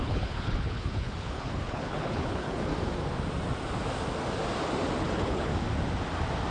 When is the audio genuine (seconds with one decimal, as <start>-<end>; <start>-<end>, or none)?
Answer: 2.7-5.0; 5.5-6.5